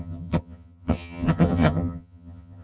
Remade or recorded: remade